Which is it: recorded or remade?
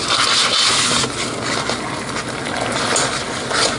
recorded